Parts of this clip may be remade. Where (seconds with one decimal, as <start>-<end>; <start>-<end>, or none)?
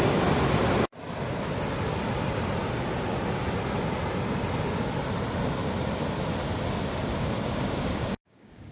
7.1-8.7